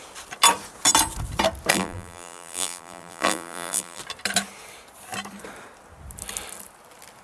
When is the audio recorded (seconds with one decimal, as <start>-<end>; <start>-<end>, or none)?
0.0-1.7; 4.0-7.2